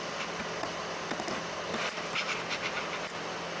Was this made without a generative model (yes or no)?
yes